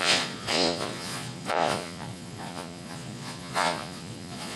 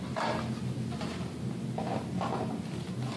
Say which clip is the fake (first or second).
first